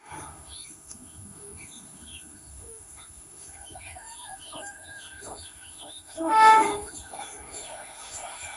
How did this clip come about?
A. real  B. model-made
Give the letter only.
B